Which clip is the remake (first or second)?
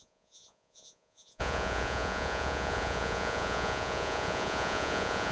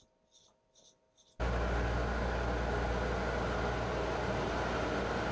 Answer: first